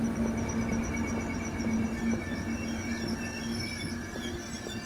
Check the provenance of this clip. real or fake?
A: real